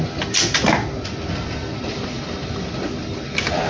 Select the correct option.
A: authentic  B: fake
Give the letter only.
A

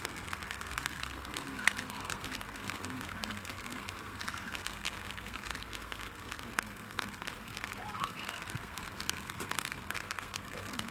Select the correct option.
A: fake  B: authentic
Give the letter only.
A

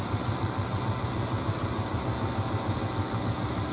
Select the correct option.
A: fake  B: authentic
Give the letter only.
B